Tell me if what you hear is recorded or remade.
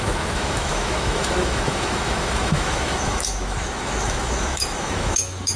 remade